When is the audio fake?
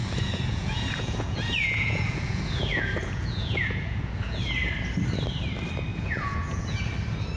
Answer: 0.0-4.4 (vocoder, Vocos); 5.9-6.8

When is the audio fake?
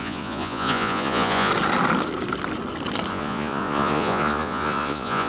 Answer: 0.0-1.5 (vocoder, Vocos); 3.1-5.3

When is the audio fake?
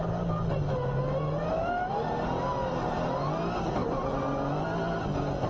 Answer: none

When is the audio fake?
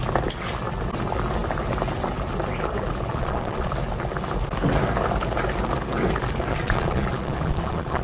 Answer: 3.1-3.7 (vocoder, Vocos); 6.5-8.0